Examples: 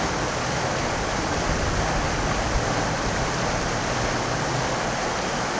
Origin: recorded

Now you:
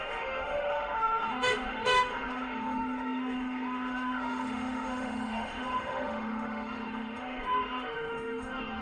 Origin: remade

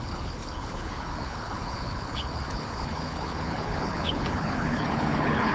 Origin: remade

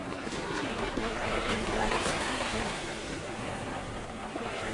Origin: remade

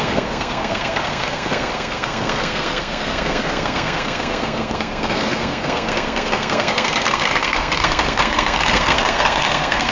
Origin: remade